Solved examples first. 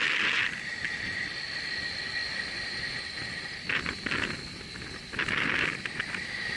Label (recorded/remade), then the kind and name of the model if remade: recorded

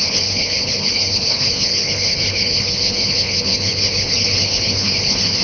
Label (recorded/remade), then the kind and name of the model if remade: remade, codec, HILCodec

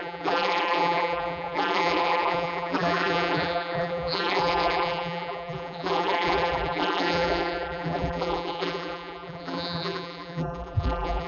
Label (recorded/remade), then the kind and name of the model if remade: remade, vocoder, BigVGAN v2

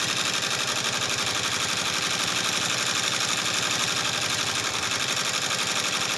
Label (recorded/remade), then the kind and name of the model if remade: recorded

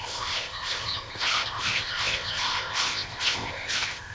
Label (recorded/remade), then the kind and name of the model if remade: remade, codec, ZipCodec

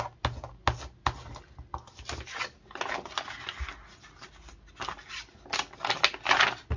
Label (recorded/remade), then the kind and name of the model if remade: recorded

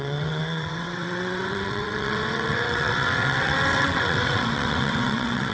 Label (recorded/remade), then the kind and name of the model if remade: remade, vocoder, WaveNeXt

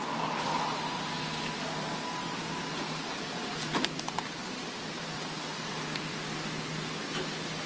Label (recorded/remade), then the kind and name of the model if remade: recorded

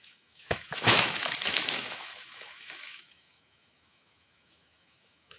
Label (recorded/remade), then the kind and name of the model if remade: remade, autoencoder, DAC-VAE